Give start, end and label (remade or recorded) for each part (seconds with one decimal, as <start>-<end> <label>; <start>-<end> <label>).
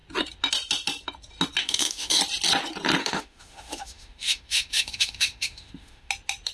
0.0-1.6 recorded; 1.6-2.2 remade; 2.2-3.0 recorded; 3.0-6.1 remade; 6.1-6.5 recorded